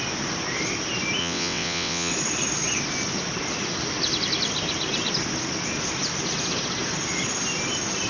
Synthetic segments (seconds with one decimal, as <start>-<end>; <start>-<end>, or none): 1.2-2.1